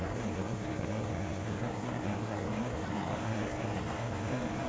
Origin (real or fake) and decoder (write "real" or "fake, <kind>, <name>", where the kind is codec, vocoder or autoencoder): fake, codec, SNAC